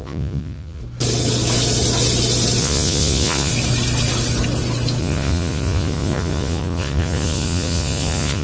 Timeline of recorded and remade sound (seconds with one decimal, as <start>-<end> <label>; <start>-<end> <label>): 0.0-0.8 remade; 0.8-2.6 recorded; 2.6-3.5 remade; 3.5-5.0 recorded; 5.0-8.4 remade